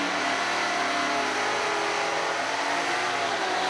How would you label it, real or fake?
real